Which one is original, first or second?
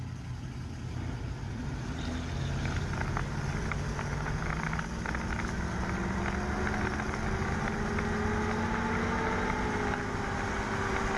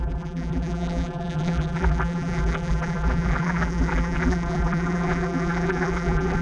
first